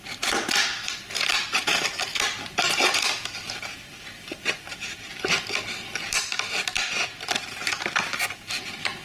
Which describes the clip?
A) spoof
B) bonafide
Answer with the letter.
B